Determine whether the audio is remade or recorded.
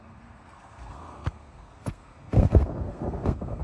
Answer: remade